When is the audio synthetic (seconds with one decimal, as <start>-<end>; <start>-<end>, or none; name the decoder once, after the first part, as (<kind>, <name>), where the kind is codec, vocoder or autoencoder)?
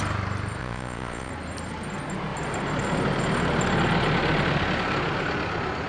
0.6-1.3 (vocoder, Vocos)